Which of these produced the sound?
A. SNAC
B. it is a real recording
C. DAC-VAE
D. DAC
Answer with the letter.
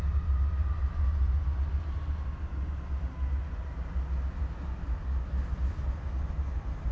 B